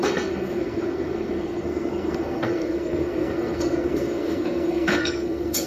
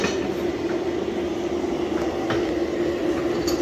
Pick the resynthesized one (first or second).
first